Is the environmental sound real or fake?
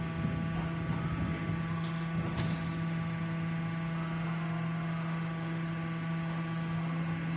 real